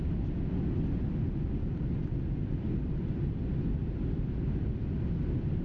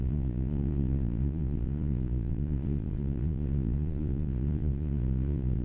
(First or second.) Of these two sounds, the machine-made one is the second